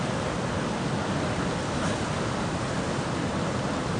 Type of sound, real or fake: real